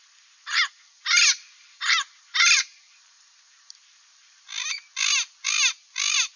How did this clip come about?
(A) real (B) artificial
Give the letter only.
A